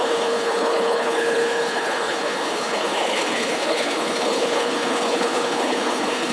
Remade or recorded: remade